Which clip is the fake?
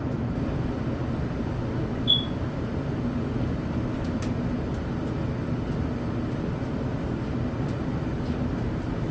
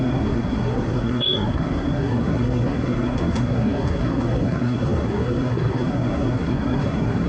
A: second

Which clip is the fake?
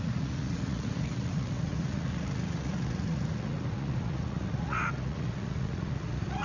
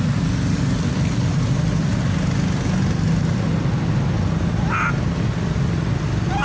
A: first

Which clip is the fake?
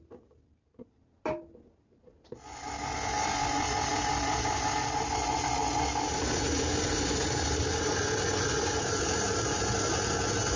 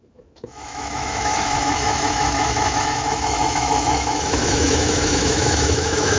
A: second